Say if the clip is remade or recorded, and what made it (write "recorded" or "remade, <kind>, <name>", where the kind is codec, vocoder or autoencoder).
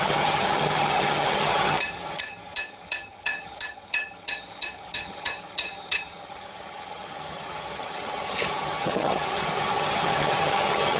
remade, vocoder, HiFi-GAN